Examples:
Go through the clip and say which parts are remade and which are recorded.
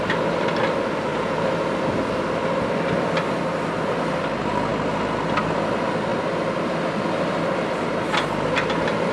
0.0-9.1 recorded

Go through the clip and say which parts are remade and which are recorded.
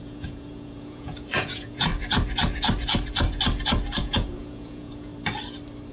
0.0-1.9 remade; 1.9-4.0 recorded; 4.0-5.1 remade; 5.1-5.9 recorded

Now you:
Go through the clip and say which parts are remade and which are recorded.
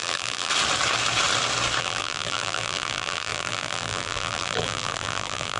0.0-0.5 remade; 0.5-1.8 recorded; 1.8-5.6 remade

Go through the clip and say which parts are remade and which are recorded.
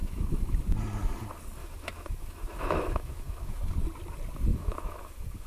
0.0-0.6 remade; 0.6-1.6 recorded; 1.6-3.7 remade; 3.7-4.5 recorded; 4.5-5.5 remade